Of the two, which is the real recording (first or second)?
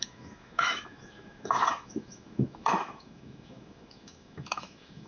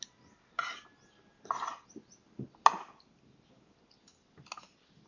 second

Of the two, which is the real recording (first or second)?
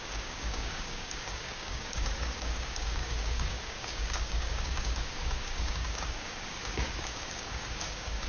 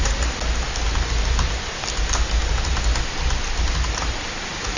second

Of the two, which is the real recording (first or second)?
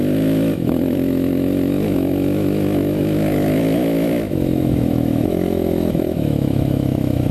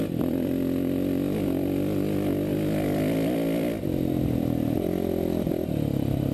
second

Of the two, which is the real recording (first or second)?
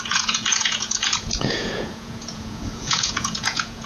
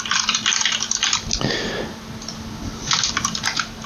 second